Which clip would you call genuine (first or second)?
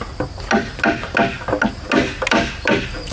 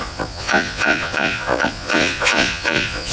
first